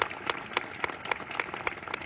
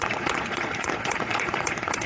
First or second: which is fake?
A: second